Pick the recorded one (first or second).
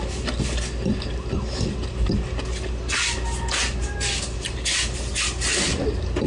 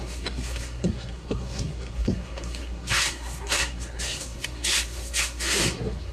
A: first